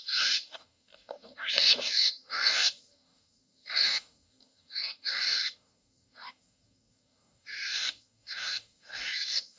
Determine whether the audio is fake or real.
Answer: fake